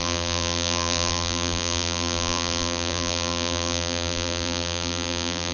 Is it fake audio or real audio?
fake